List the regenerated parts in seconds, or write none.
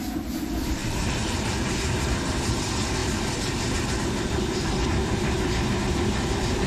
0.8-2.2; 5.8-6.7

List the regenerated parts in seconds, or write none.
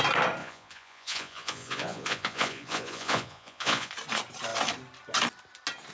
0.4-3.9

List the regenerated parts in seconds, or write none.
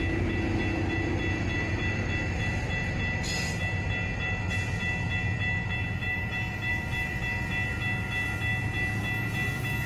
6.0-7.5